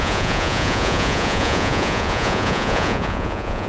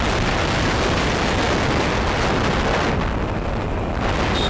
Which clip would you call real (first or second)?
second